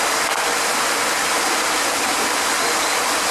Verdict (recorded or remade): recorded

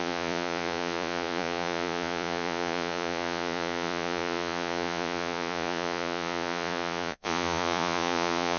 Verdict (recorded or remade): remade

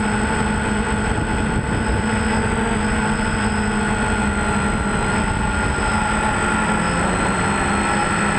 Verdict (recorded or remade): recorded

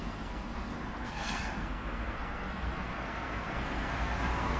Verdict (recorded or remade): remade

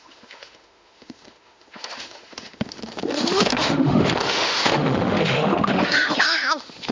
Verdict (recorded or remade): remade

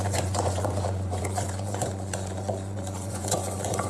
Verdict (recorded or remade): remade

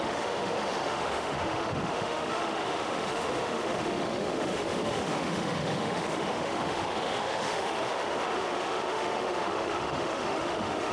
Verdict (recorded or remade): remade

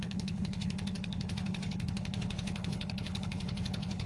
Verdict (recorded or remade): remade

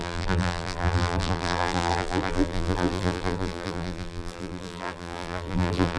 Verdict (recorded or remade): remade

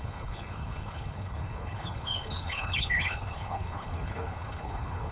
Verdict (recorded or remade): remade